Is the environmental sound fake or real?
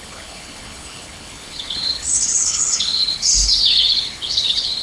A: fake